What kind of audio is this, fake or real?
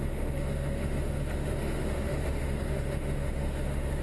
fake